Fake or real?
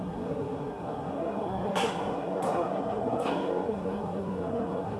fake